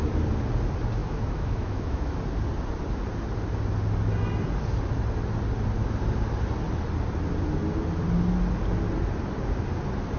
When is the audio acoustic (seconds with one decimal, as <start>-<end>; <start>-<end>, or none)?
0.0-1.0; 2.2-10.2